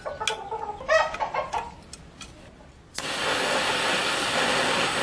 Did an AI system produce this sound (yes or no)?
no